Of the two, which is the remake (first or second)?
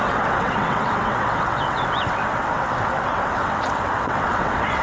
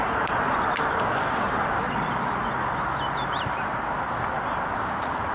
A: first